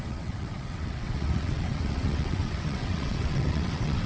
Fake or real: fake